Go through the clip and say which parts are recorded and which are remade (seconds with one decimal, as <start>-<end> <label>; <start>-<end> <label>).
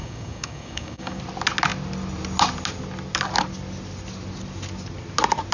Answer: 0.0-1.2 remade; 1.2-5.5 recorded